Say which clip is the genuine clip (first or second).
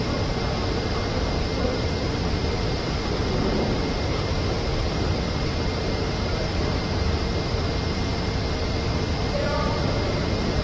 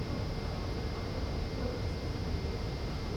second